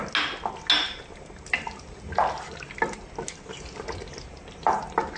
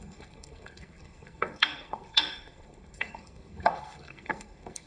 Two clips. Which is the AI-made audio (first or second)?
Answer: second